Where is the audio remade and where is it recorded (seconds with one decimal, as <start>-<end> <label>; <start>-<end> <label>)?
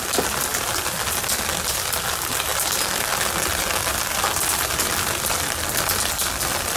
0.0-6.8 recorded